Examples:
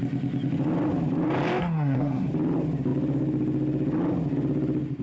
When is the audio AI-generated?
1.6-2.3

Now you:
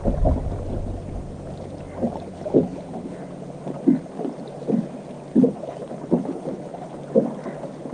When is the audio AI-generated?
2.3-3.2; 5.3-7.0